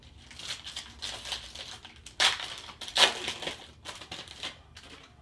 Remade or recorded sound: recorded